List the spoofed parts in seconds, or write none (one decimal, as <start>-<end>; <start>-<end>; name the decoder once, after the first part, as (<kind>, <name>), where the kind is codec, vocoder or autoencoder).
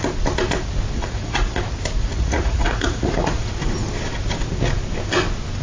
1.0-1.6 (vocoder, Vocos); 2.0-3.6